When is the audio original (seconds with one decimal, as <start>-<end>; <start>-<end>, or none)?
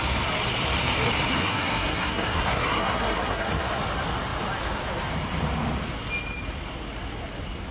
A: 0.0-1.4; 3.8-7.7